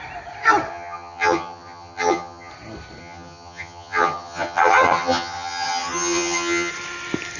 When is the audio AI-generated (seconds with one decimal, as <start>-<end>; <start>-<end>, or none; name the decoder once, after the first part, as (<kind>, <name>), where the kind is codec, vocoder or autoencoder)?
0.7-2.5 (vocoder, HiFi-GAN); 3.0-6.7

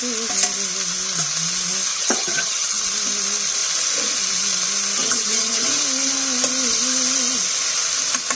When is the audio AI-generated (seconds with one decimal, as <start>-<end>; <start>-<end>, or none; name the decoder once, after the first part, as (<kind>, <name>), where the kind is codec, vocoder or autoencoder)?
1.9-2.8 (vocoder, HiFi-GAN); 5.0-5.7

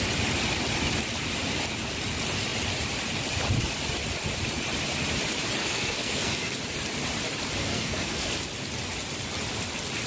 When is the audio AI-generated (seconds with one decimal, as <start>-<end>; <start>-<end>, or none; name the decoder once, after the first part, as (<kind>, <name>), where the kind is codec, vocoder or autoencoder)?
5.6-6.6 (codec, SNAC); 7.6-8.3

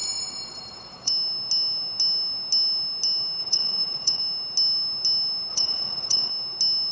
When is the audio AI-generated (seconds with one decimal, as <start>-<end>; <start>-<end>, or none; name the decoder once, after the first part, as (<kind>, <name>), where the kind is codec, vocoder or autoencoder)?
0.0-1.1 (vocoder, Vocos); 3.4-4.2; 5.5-6.3